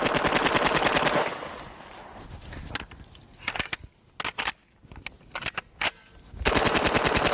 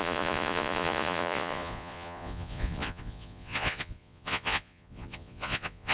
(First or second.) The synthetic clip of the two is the second